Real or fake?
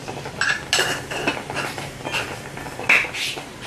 real